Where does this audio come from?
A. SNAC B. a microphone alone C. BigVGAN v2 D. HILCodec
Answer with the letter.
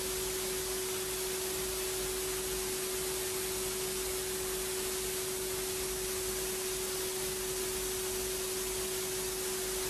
B